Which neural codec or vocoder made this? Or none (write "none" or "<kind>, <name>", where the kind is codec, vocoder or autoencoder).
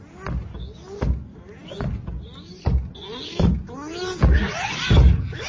none